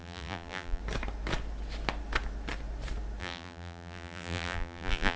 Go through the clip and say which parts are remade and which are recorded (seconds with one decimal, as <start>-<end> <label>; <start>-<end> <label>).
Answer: 0.0-0.8 remade; 0.8-3.2 recorded; 3.2-5.2 remade